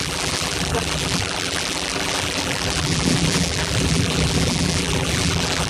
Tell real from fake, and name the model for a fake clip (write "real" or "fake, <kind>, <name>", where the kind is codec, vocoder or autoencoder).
fake, vocoder, BigVGAN v2